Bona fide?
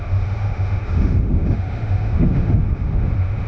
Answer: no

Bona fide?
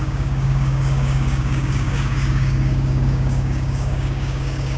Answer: no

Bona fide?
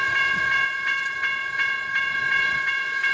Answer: no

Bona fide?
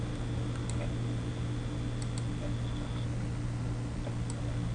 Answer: yes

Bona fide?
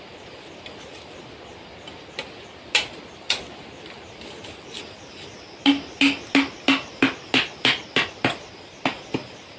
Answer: yes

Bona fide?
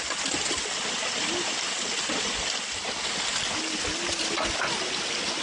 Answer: yes